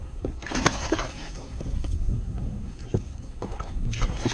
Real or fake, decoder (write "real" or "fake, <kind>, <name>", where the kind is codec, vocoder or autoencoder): fake, codec, SNAC